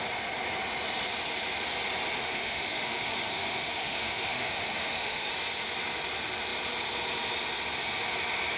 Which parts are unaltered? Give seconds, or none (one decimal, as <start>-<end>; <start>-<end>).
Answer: 0.0-2.2; 5.3-8.6